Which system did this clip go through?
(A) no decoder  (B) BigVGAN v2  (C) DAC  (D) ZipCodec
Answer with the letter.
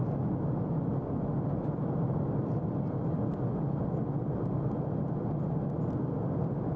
A